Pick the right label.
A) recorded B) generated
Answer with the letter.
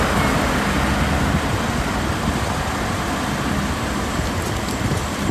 A